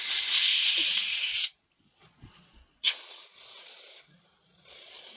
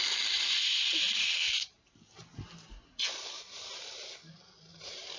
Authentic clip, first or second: second